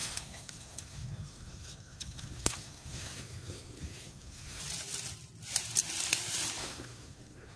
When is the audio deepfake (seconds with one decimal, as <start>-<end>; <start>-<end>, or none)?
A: 0.0-4.6; 6.6-7.6